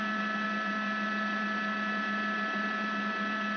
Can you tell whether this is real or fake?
real